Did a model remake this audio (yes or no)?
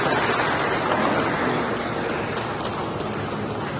no